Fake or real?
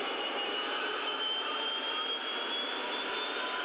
fake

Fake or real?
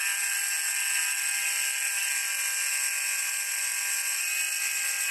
real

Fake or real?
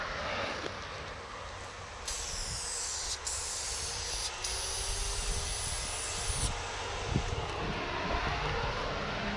real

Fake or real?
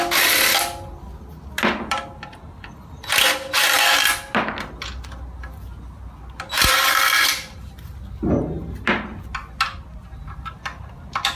real